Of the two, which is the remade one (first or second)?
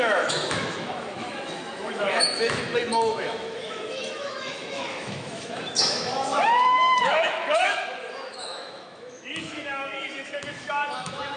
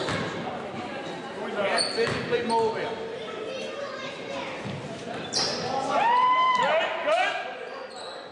first